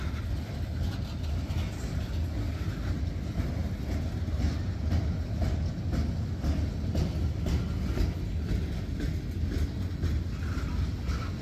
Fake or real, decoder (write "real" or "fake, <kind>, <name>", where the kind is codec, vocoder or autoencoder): real